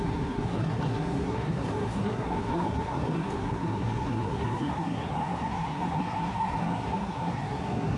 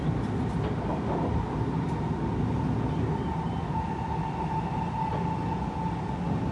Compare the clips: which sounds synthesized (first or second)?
first